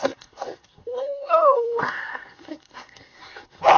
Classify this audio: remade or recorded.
remade